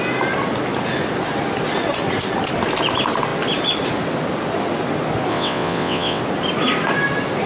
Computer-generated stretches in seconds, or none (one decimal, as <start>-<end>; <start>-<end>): 5.3-6.2